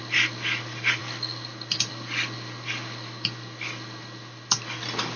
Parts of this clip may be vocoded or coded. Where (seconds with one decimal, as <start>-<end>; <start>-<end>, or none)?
none